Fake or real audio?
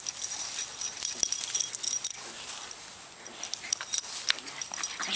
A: real